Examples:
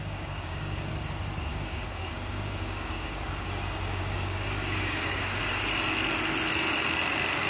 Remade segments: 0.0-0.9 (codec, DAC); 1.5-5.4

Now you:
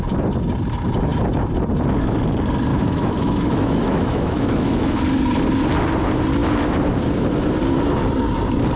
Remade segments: 2.7-5.0 (autoencoder, DAC-VAE)